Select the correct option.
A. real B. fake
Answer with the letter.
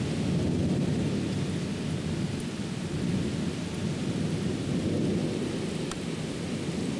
A